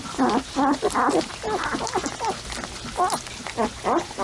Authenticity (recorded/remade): recorded